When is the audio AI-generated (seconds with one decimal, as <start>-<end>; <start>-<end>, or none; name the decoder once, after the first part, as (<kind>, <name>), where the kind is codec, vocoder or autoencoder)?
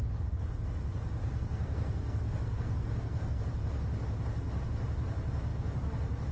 1.2-3.4 (codec, SNAC)